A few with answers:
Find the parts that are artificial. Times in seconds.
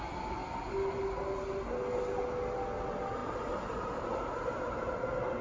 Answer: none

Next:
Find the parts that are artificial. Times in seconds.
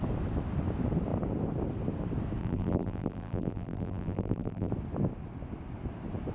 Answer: 2.4-4.7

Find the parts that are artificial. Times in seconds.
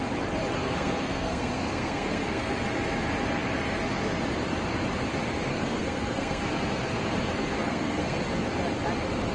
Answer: 0.6-2.5; 5.5-6.4; 7.6-8.2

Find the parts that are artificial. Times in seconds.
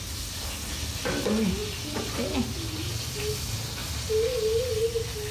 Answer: none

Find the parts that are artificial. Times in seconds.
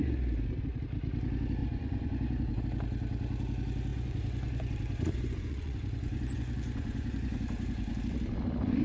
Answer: 1.6-2.6; 3.9-8.0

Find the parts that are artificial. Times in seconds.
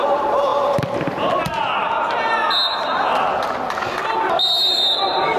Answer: none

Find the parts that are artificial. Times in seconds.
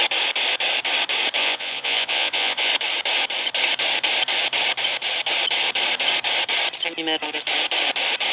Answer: 1.4-2.7